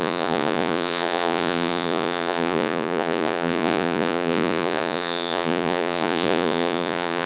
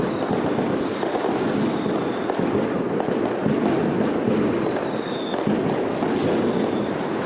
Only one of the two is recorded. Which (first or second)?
second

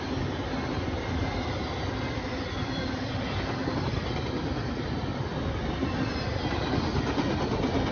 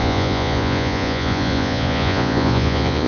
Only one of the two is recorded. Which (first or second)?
first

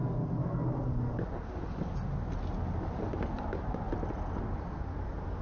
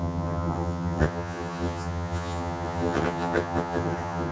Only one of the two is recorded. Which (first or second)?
first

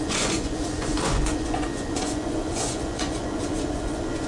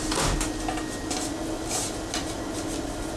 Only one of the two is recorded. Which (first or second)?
second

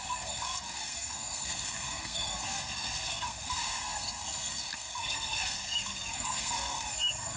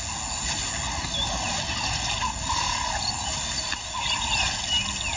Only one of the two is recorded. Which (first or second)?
second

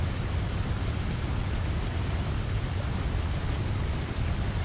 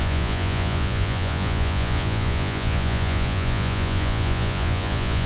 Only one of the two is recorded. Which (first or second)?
first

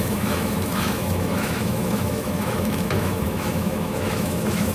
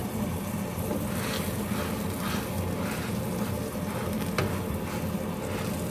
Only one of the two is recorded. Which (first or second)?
second